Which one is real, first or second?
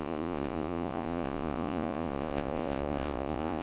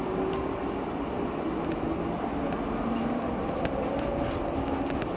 second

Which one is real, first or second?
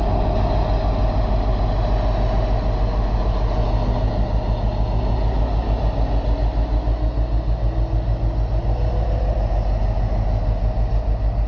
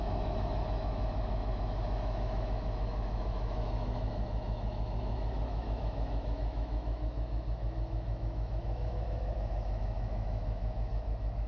first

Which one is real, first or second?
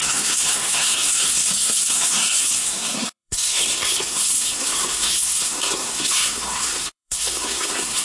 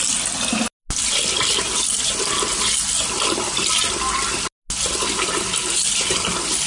second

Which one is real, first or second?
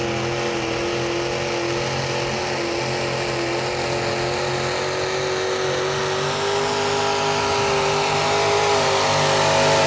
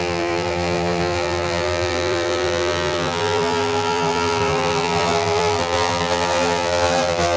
first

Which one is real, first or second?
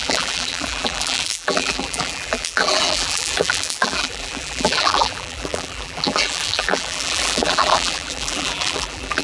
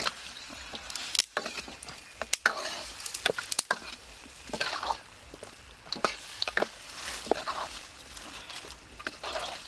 second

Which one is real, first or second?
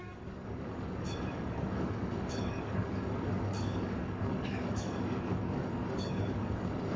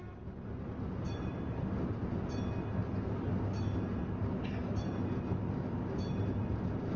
second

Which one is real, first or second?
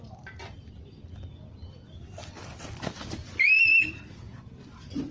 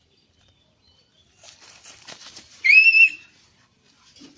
first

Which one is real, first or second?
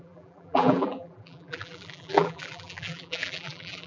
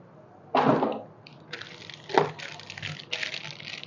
second